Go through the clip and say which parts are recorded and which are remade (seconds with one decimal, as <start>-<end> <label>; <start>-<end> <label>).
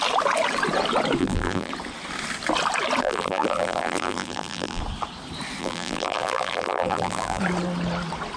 0.0-1.2 recorded; 1.2-1.7 remade; 1.7-3.0 recorded; 3.0-4.8 remade; 4.8-5.6 recorded; 5.6-7.4 remade; 7.4-8.4 recorded